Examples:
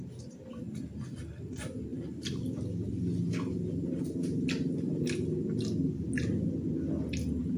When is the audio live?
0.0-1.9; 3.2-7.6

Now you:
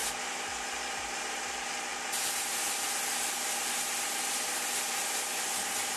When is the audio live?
0.0-6.0

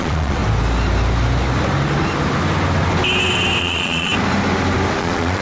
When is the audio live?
0.4-3.6; 4.1-5.0

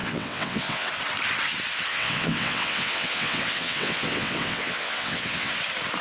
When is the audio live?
0.9-1.9; 5.5-6.0

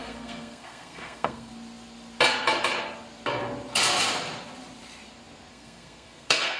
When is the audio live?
1.5-5.5

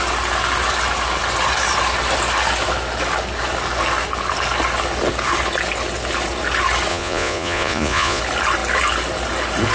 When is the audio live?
0.0-6.9; 8.2-9.7

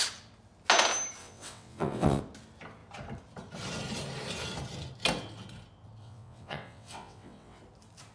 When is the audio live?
0.0-1.2; 2.2-6.0; 7.6-8.1